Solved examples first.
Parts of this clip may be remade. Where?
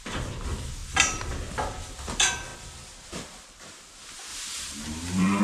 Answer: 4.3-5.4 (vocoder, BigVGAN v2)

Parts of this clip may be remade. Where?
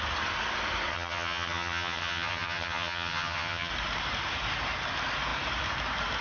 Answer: 0.9-3.7 (vocoder, HiFi-GAN)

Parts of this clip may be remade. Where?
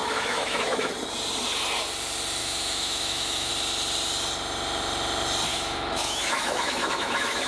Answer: 0.0-0.9 (autoencoder, DAC-VAE); 2.4-3.5; 5.5-7.5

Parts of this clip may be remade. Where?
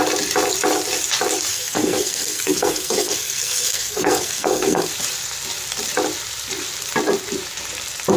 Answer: 1.5-4.9 (codec, SNAC)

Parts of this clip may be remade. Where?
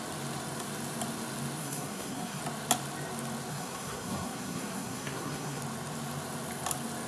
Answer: 1.6-2.4 (codec, SNAC); 3.5-5.6